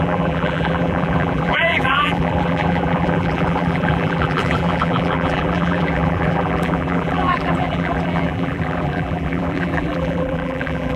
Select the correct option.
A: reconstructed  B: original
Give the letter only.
A